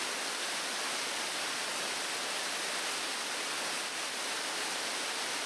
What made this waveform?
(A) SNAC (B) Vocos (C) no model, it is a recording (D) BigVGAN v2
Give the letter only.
C